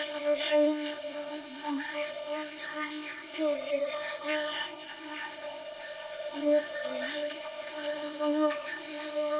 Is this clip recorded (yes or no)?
no